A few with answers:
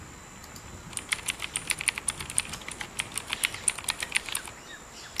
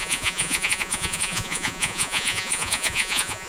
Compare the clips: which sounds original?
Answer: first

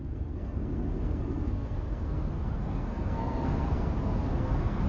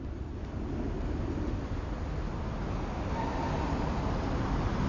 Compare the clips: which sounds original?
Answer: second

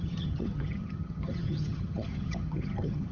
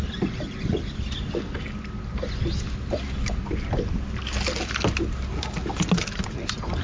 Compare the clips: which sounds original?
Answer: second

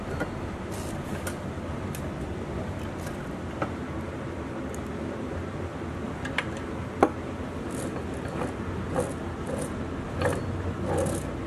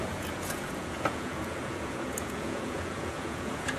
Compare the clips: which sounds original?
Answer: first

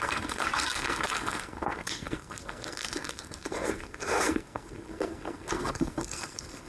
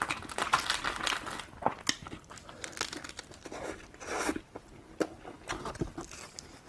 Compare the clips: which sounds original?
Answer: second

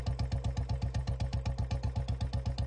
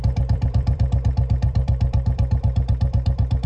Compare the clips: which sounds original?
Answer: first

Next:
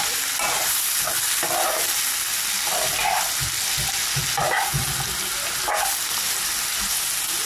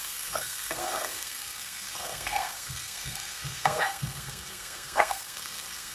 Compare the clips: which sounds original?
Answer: first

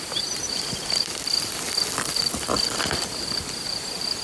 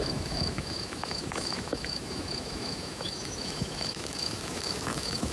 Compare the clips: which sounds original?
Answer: first